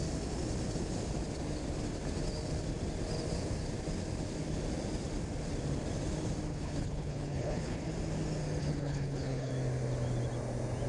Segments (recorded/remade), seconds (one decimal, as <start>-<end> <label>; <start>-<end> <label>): 0.0-6.5 recorded; 6.5-7.9 remade; 7.9-8.6 recorded; 8.6-9.5 remade; 9.5-10.9 recorded